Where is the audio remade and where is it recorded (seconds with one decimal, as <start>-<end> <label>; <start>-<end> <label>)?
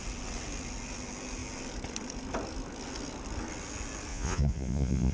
0.0-4.1 recorded; 4.1-5.1 remade